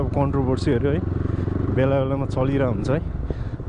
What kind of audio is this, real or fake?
real